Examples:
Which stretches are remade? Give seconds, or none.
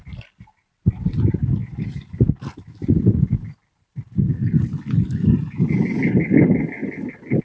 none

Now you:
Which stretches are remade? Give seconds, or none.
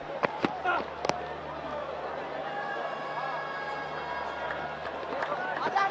none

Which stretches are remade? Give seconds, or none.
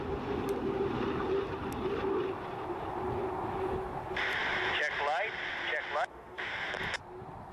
6.1-6.7 (autoencoder, DAC-VAE)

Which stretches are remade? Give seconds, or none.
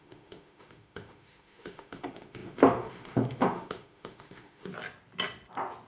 0.0-4.7 (autoencoder, DAC-VAE)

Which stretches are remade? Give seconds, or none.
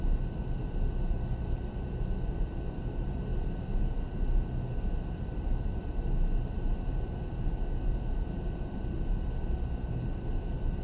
none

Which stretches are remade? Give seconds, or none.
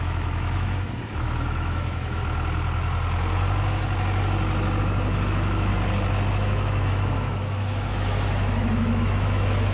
0.0-2.2 (autoencoder, DAC-VAE); 4.8-5.7; 6.3-9.7